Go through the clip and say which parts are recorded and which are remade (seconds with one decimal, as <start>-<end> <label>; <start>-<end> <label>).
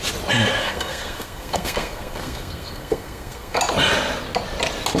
0.0-0.6 recorded; 0.6-3.6 remade; 3.6-5.0 recorded